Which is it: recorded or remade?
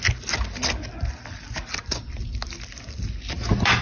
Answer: recorded